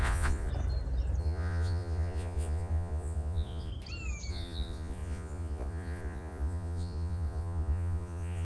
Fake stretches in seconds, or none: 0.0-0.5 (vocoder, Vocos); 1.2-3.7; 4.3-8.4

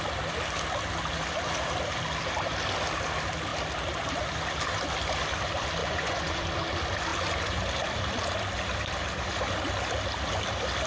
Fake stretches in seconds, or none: 5.8-6.4 (vocoder, Vocos)

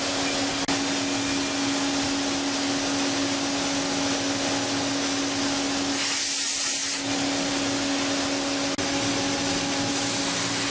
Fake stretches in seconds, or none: none

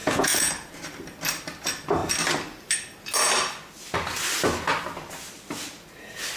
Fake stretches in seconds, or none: 0.0-0.5 (vocoder, Vocos)